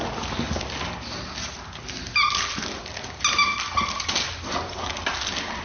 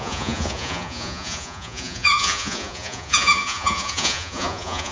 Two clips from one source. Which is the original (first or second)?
first